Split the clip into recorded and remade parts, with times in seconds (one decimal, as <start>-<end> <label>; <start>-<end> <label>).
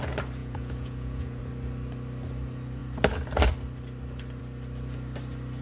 0.0-0.4 recorded; 0.4-1.4 remade; 1.4-5.6 recorded